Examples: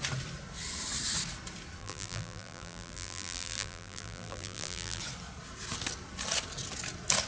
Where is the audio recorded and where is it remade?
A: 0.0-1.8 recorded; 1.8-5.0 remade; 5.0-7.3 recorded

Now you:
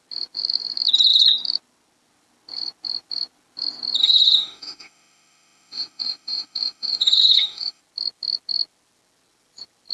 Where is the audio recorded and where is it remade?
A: 0.0-4.0 recorded; 4.0-7.8 remade; 7.8-9.9 recorded